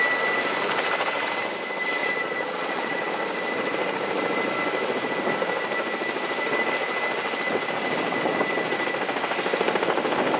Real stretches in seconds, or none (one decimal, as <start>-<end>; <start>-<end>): 0.0-2.0; 3.1-10.4